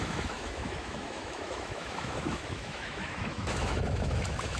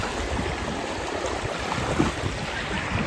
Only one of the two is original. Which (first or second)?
second